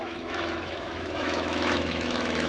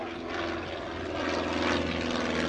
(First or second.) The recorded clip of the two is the second